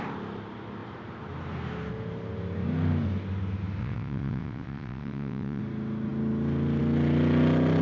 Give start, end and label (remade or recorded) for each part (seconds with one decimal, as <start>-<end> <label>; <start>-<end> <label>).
0.0-3.8 recorded; 3.8-5.6 remade; 5.6-7.8 recorded